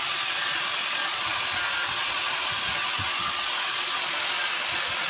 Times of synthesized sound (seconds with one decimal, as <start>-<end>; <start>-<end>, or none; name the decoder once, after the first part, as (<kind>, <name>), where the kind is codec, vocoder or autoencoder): none